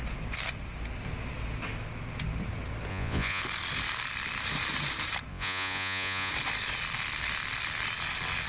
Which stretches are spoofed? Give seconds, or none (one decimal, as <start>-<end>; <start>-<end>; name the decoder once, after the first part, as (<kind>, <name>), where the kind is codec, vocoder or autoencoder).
2.9-3.4 (vocoder, Vocos); 5.3-6.3